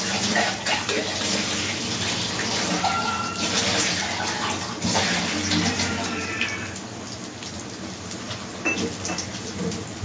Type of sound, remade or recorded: recorded